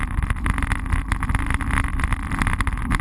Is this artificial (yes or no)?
no